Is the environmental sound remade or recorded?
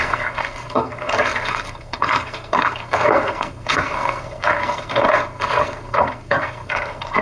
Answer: remade